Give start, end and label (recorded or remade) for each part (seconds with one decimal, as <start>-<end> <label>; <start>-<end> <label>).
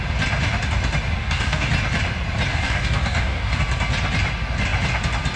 0.0-1.2 recorded; 1.2-1.7 remade; 1.7-2.5 recorded; 2.5-3.6 remade; 3.6-5.4 recorded